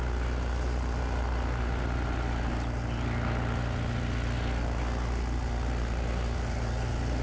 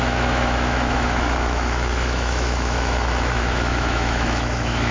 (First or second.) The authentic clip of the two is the first